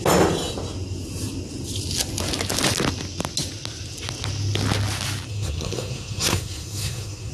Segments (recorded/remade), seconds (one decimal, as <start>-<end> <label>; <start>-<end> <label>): 0.0-5.3 recorded; 5.3-7.3 remade